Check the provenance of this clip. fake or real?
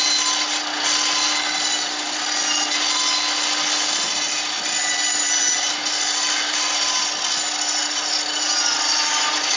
real